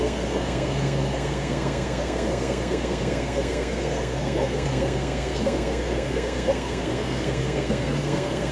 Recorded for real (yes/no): no